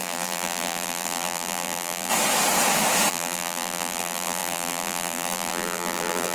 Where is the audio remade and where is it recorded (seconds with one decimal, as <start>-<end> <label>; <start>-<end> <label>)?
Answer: 0.0-2.1 remade; 2.1-3.1 recorded; 3.1-6.3 remade

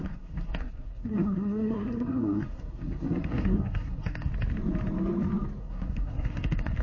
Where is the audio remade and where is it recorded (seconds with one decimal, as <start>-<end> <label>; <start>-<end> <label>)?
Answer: 0.0-4.3 remade; 4.3-5.6 recorded; 5.6-6.8 remade

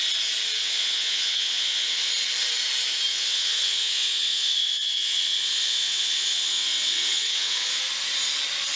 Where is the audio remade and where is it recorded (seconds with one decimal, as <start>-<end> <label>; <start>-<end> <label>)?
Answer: 0.0-0.6 recorded; 0.6-2.1 remade; 2.1-3.1 recorded; 3.1-7.8 remade; 7.8-8.8 recorded

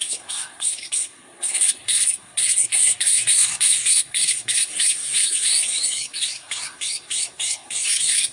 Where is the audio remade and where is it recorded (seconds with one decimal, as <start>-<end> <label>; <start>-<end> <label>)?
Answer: 0.0-8.3 remade

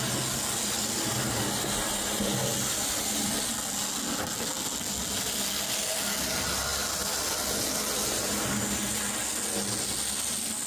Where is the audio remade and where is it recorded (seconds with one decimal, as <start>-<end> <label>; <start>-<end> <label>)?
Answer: 0.0-10.7 recorded